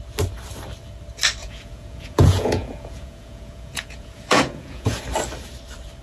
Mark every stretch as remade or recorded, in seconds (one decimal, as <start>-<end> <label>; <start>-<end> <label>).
0.0-1.4 recorded; 1.4-5.0 remade; 5.0-6.0 recorded